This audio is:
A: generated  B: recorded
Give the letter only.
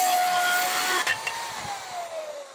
B